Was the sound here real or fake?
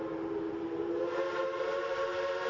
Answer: real